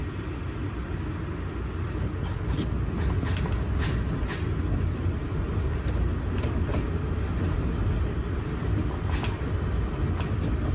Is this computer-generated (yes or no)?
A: no